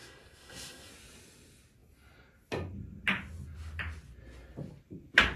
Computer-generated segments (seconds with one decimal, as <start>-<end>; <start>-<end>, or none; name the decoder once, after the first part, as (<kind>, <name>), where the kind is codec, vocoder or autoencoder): 0.0-0.9 (codec, SNAC)

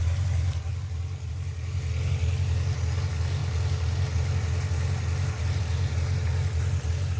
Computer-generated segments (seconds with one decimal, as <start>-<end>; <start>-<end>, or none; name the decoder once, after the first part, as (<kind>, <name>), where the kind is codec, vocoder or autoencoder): none

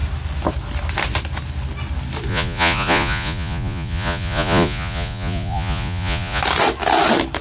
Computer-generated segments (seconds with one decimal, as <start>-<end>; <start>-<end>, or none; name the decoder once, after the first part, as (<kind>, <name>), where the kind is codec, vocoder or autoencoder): 2.3-6.4 (vocoder, Vocos)

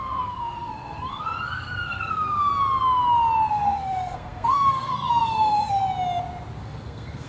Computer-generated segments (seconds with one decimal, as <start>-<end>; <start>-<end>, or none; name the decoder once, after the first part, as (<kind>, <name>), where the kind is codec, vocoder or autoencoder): 0.0-2.5 (codec, SNAC); 3.5-5.8; 6.6-7.3

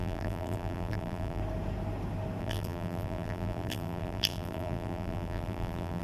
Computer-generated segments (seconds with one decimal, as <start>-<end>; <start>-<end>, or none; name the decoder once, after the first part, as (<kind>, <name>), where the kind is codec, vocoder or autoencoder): 0.0-1.4 (vocoder, BigVGAN v2); 2.4-6.0

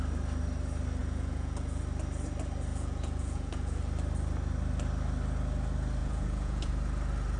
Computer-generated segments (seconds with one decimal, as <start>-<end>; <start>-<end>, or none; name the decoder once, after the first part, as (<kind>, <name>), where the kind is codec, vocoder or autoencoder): 1.0-1.8 (vocoder, Vocos); 2.7-3.8; 6.0-6.7

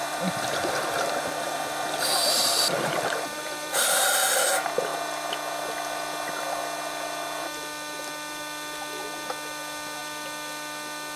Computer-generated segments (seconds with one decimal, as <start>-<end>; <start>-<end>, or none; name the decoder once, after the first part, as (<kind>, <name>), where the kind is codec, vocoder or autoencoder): 0.0-4.1 (vocoder, BigVGAN v2)